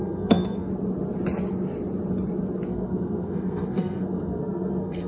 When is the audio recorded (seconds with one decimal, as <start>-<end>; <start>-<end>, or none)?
0.7-2.7